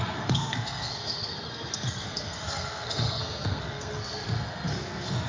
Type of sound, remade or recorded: remade